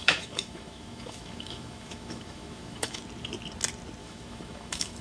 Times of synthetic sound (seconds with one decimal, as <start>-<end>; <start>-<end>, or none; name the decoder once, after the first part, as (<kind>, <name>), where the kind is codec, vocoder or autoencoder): 0.0-3.0 (autoencoder, DAC-VAE); 4.0-5.0